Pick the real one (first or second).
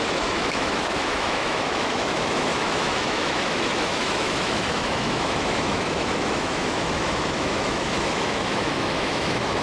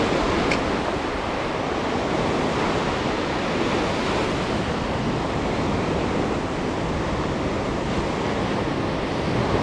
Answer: second